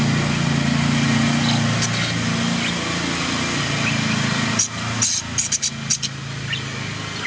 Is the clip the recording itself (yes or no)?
yes